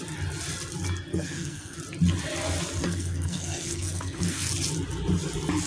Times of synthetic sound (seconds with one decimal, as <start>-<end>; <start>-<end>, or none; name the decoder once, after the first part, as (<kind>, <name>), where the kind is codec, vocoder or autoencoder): 1.1-1.8 (codec, SNAC); 2.8-4.5